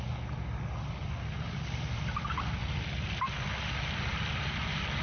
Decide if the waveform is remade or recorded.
recorded